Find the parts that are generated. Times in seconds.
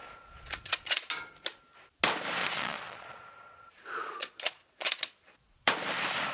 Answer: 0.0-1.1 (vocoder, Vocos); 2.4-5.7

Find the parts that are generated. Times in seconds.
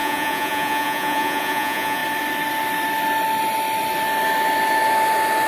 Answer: 0.0-2.0 (vocoder, Vocos)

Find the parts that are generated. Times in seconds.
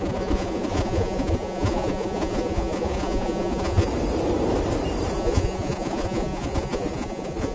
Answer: 0.0-3.9 (vocoder, Vocos); 5.1-7.5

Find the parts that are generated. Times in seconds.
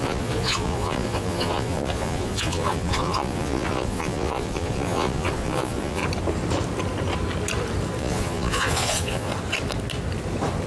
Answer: 0.0-6.0 (vocoder, Vocos); 8.0-9.3